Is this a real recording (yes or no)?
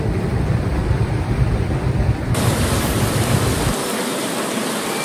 no